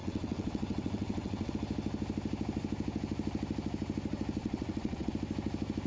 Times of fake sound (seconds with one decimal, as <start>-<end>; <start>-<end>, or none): 0.0-1.5; 4.4-5.1